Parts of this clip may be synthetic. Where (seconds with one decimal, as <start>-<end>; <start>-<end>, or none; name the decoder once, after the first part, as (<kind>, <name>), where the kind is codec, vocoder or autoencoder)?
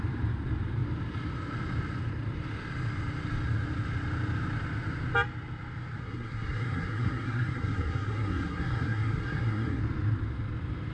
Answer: 6.0-9.8 (codec, SNAC)